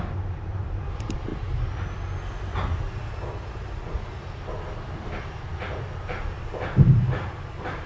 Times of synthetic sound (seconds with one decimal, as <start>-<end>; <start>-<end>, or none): 0.0-1.3; 5.0-7.9